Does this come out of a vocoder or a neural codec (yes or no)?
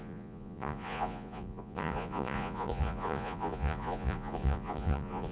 yes